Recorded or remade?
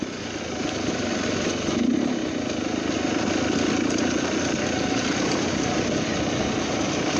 recorded